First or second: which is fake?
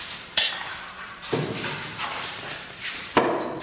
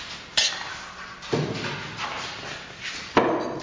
first